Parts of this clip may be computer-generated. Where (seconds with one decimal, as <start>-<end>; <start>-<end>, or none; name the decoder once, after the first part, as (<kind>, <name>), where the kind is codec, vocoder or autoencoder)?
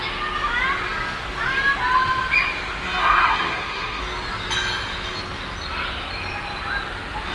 3.0-4.0 (codec, SNAC)